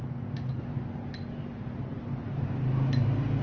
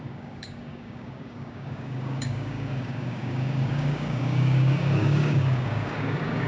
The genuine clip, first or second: first